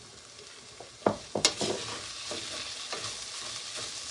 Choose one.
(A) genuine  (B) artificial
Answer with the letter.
A